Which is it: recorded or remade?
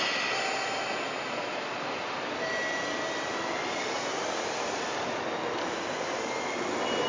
recorded